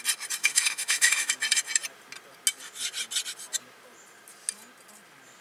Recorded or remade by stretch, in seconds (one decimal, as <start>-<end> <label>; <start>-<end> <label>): 0.0-0.4 recorded; 0.4-1.3 remade; 1.3-5.4 recorded